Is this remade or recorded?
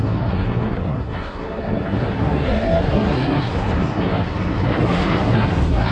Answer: remade